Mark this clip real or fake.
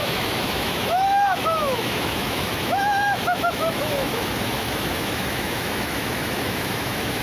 fake